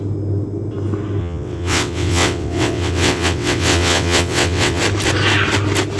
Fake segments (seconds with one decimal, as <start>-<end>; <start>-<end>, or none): 1.2-4.8